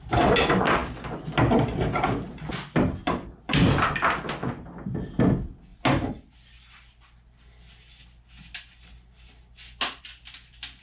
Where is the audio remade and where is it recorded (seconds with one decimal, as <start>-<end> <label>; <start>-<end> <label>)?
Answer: 0.0-10.8 recorded